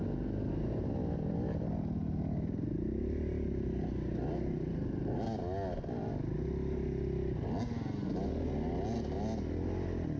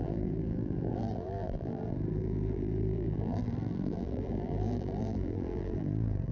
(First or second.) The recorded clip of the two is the first